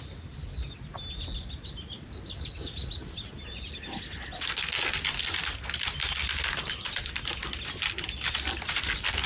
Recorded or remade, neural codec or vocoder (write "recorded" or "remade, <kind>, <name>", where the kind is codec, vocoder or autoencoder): recorded